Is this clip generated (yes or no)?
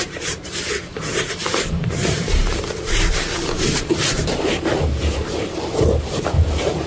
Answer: yes